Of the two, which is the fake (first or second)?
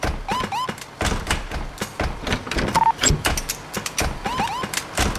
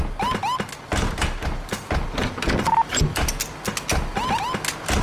first